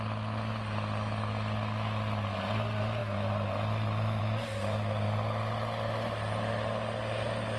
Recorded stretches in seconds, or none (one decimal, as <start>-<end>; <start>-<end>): 0.0-7.6